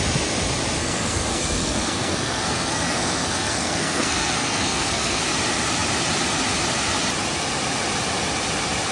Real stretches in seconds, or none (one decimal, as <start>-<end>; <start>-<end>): 0.0-0.8; 5.2-8.9